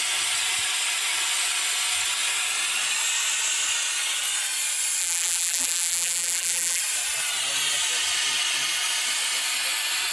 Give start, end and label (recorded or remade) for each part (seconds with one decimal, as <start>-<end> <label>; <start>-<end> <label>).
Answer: 0.0-5.0 recorded; 5.0-6.8 remade; 6.8-10.1 recorded